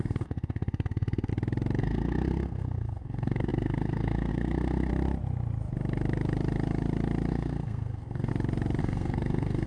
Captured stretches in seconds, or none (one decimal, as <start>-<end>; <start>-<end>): 1.3-1.8; 4.9-7.3; 8.3-8.8